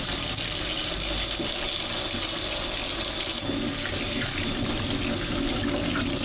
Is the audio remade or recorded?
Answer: recorded